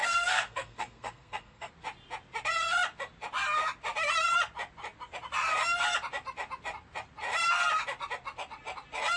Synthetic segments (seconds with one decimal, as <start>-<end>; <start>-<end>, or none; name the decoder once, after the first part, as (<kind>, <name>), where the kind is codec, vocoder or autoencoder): 0.0-1.7 (codec, SNAC)